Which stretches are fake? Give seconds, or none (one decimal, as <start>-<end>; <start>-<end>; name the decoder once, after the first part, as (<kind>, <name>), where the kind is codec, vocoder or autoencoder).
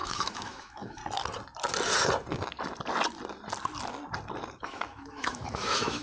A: 0.0-1.0 (autoencoder, DAC-VAE); 4.6-6.0